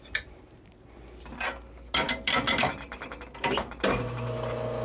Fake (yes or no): no